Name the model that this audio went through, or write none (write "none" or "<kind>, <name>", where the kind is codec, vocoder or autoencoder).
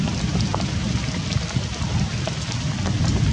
none